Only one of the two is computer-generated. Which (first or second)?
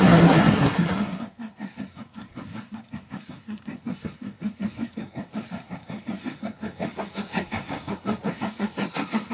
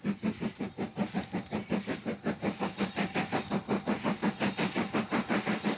first